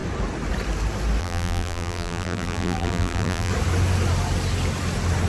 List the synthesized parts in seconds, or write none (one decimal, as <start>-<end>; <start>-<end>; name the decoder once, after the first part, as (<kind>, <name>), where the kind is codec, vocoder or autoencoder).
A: 1.2-3.5 (vocoder, BigVGAN v2)